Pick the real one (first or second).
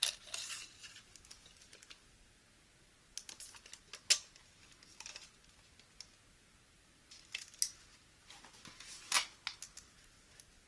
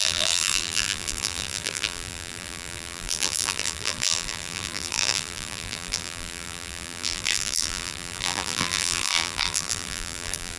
first